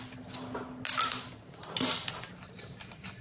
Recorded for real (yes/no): yes